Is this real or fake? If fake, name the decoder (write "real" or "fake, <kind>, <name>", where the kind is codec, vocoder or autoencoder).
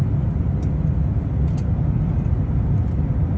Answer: real